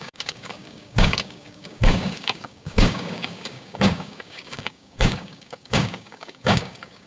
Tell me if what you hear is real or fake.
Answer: fake